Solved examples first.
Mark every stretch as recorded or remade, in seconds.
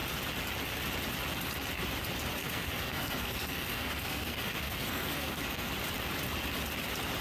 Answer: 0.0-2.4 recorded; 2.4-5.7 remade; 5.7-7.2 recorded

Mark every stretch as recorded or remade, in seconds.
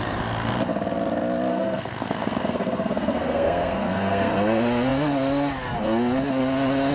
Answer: 0.0-1.5 recorded; 1.5-4.3 remade; 4.3-6.9 recorded